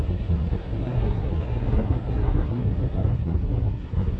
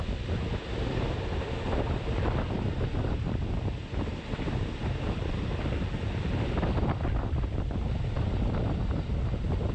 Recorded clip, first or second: second